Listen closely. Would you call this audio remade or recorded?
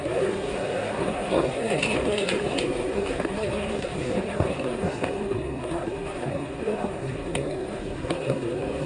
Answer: remade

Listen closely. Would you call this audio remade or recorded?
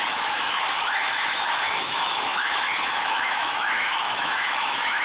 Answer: remade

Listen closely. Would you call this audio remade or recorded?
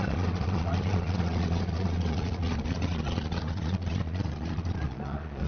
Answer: remade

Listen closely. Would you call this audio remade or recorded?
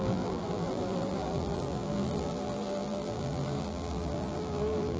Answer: remade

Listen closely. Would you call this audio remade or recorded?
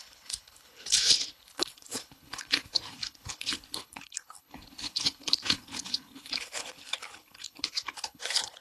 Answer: remade